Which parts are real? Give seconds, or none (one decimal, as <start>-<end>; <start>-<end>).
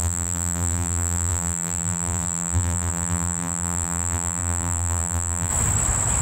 5.5-6.2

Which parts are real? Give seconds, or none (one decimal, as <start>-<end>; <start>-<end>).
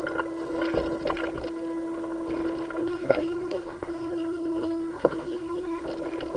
0.0-2.8; 5.8-6.4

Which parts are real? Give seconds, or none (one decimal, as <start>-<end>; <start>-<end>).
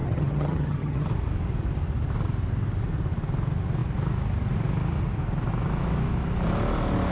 1.1-7.1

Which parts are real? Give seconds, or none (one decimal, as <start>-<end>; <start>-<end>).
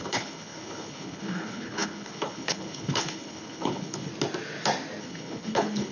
4.1-5.0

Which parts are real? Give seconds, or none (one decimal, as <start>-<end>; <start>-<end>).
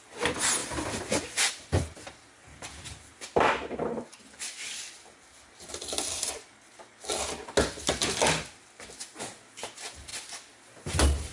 0.0-0.6; 1.5-2.4; 6.3-8.0; 9.3-11.3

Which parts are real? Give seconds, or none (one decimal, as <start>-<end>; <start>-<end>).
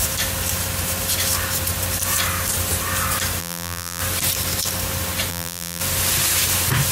0.0-3.4; 4.0-5.3; 5.8-6.9